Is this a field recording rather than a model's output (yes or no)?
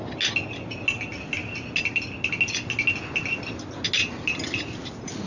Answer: yes